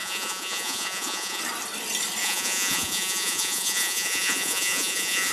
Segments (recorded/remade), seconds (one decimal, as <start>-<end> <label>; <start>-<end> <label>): 0.0-1.4 remade; 1.4-2.2 recorded; 2.2-5.3 remade